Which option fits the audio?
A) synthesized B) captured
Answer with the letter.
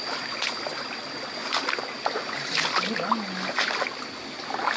B